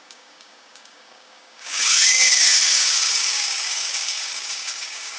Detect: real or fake fake